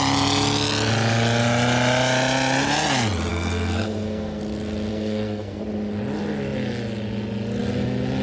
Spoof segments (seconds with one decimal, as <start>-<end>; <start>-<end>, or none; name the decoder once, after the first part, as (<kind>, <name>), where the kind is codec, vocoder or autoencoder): 3.3-4.4 (codec, SNAC); 4.9-5.6